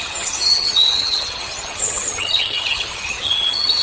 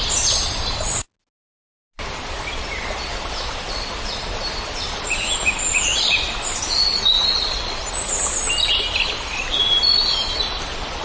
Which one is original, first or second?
second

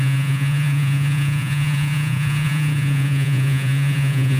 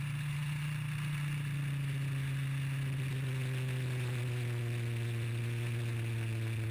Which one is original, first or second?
second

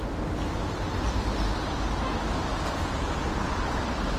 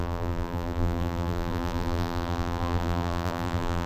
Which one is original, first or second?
first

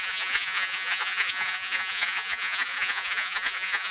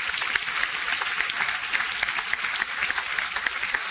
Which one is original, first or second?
second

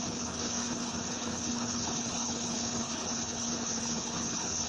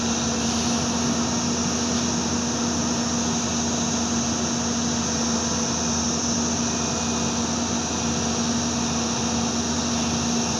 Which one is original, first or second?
second